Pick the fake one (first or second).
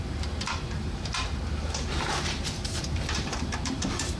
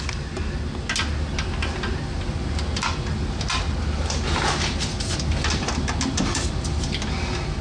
first